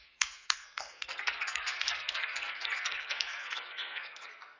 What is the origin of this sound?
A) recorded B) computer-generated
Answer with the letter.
B